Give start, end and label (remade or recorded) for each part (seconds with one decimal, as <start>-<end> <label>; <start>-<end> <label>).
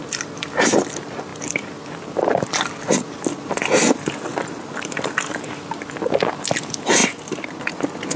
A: 0.0-8.2 recorded